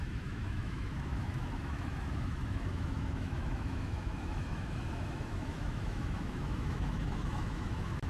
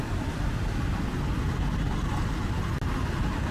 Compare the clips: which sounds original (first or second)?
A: second